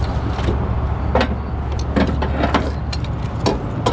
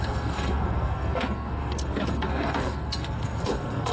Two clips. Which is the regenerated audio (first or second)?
second